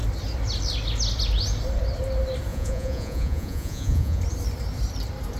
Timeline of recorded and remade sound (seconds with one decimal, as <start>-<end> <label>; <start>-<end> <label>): 0.0-2.5 recorded; 2.5-4.2 remade; 4.2-5.4 recorded

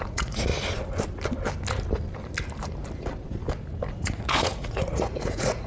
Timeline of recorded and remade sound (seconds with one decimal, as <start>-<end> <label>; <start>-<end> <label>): 0.0-0.5 remade; 0.5-3.9 recorded; 3.9-5.7 remade

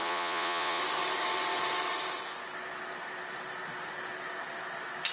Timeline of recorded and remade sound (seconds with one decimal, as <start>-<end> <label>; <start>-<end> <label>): 0.0-0.8 remade; 0.8-5.1 recorded

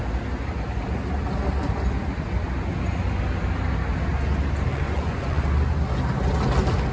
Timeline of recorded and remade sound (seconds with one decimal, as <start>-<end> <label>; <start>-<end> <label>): 0.0-4.7 recorded; 4.7-5.4 remade; 5.4-6.9 recorded

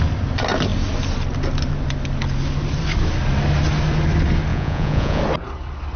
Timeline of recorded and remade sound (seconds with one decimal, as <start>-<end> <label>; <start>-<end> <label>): 0.0-4.5 recorded; 4.5-5.2 remade; 5.2-6.0 recorded

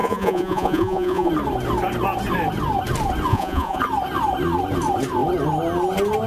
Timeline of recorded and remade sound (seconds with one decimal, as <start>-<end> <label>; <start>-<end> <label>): 0.0-1.3 remade; 1.3-3.3 recorded; 3.3-3.8 remade; 3.8-6.3 recorded

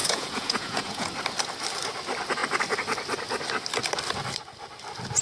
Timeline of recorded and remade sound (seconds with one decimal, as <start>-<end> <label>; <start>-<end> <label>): 0.0-1.1 remade; 1.1-5.2 recorded

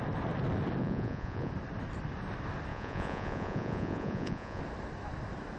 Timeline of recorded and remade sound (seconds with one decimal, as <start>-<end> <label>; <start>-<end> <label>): 0.0-0.8 recorded; 0.8-1.5 remade; 1.5-2.7 recorded; 2.7-4.6 remade; 4.6-5.6 recorded